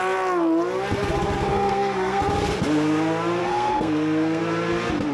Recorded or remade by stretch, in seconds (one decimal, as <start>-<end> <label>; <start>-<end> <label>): 0.0-1.5 recorded; 1.5-2.2 remade; 2.2-3.4 recorded; 3.4-4.4 remade; 4.4-5.1 recorded